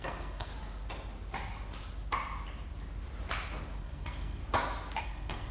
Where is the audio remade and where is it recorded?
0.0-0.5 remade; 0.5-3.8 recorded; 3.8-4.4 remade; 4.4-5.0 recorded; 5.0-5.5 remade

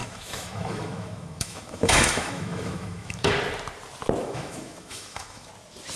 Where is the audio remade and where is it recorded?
0.0-3.3 remade; 3.3-4.2 recorded; 4.2-5.5 remade; 5.5-6.0 recorded

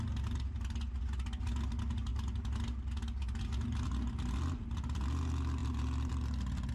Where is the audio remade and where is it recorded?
0.0-6.7 recorded

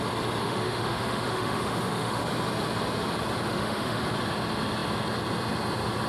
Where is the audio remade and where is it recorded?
0.0-0.4 recorded; 0.4-2.2 remade; 2.2-3.5 recorded; 3.5-4.0 remade; 4.0-6.1 recorded

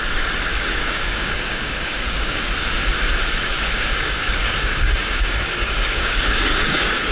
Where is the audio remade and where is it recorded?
0.0-0.5 recorded; 0.5-2.4 remade; 2.4-3.5 recorded; 3.5-7.1 remade